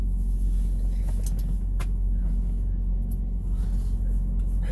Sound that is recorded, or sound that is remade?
recorded